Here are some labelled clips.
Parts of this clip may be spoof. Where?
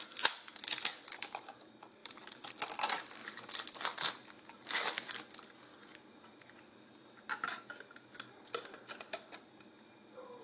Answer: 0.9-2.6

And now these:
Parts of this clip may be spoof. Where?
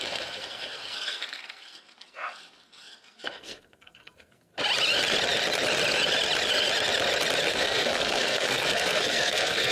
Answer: 0.0-4.5; 7.5-9.7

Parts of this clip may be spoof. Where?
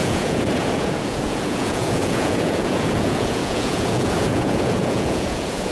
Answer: 0.0-5.7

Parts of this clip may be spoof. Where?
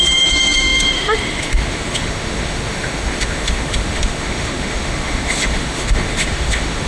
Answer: 0.0-6.9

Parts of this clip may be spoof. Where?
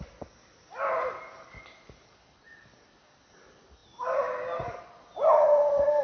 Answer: none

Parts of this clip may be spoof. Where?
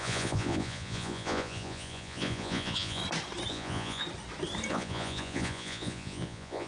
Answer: 0.0-3.0; 3.5-4.0; 4.7-6.7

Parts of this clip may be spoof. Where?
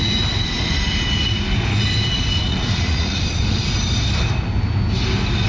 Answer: 2.5-3.2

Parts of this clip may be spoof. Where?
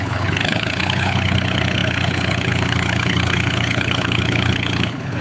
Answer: 0.0-5.2